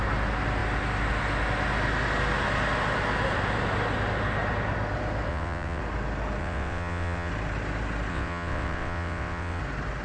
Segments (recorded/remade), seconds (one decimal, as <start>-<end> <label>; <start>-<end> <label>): 0.0-5.3 recorded; 5.3-5.8 remade; 5.8-6.4 recorded; 6.4-7.3 remade; 7.3-8.1 recorded; 8.1-9.6 remade; 9.6-10.0 recorded